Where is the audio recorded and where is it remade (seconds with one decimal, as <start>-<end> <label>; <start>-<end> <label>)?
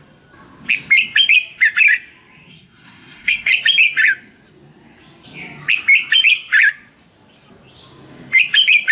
0.0-2.5 recorded; 2.5-3.5 remade; 3.5-8.9 recorded